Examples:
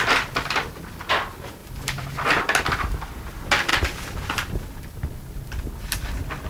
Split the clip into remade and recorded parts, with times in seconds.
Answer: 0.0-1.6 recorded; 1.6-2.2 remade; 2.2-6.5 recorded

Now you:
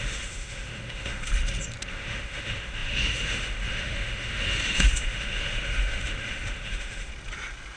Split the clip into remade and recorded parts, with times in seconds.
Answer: 0.0-1.3 remade; 1.3-1.9 recorded; 1.9-7.1 remade; 7.1-7.8 recorded

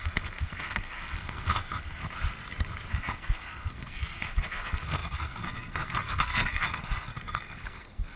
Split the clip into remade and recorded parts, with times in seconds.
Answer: 0.0-2.0 remade; 2.0-2.9 recorded; 2.9-8.2 remade

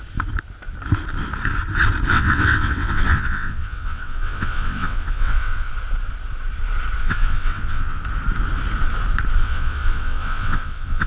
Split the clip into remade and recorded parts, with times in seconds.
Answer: 0.0-2.1 recorded; 2.1-5.7 remade; 5.7-7.0 recorded; 7.0-8.0 remade; 8.0-9.4 recorded; 9.4-11.1 remade

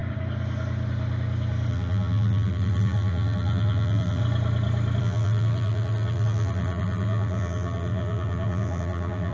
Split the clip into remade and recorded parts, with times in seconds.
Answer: 0.0-1.7 recorded; 1.7-4.2 remade; 4.2-5.0 recorded; 5.0-9.3 remade

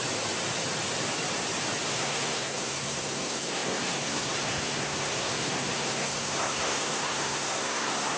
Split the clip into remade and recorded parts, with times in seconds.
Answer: 0.0-1.9 recorded; 1.9-8.2 remade

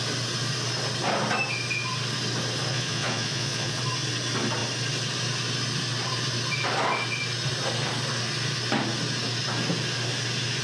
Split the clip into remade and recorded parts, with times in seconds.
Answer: 0.0-2.7 recorded; 2.7-3.8 remade; 3.8-10.6 recorded

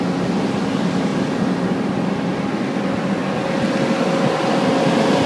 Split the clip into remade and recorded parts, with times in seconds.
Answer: 0.0-5.3 recorded